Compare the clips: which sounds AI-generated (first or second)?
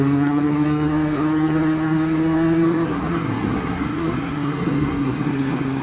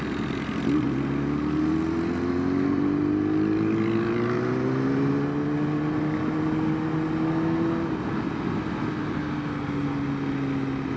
first